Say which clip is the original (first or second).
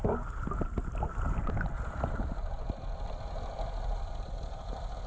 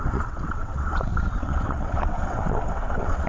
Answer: first